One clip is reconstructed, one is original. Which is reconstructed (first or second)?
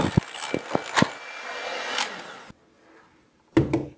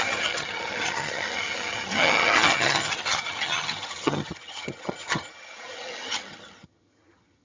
second